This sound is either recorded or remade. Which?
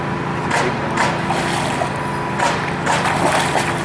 recorded